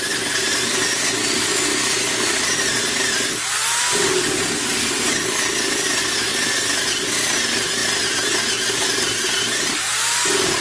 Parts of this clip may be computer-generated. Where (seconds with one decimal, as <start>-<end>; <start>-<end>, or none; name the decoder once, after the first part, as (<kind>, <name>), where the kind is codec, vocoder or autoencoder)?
6.3-7.1 (vocoder, BigVGAN v2); 7.8-9.7